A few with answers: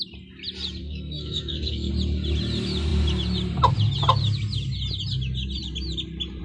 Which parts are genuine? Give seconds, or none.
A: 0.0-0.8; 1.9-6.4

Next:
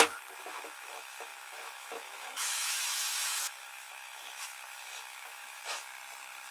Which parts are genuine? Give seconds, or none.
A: 5.9-6.5

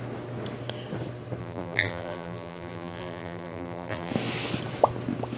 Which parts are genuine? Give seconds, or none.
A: 0.0-1.4; 4.1-5.4

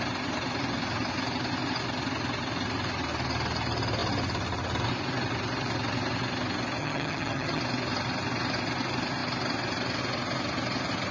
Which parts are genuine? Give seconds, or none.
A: 0.0-6.8; 7.6-11.1

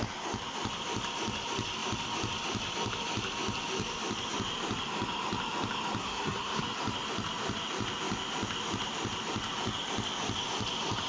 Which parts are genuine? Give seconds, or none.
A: 0.0-6.0; 6.6-11.1